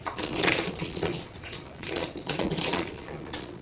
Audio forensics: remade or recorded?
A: remade